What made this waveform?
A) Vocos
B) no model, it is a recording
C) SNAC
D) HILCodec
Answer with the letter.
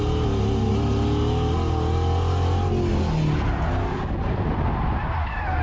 B